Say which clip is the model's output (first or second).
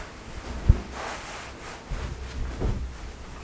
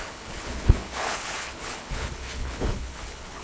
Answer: second